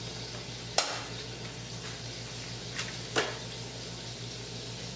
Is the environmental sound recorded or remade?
recorded